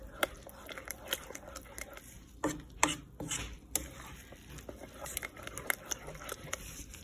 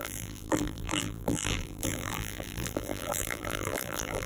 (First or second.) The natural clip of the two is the first